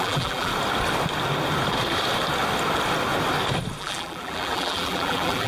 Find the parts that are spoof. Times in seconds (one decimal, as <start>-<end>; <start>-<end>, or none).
0.0-0.5; 3.8-5.5